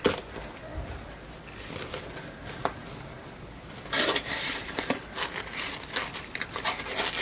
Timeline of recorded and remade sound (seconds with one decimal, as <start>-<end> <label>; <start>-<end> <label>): 0.0-7.2 recorded